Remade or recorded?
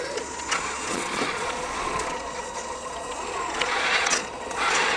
remade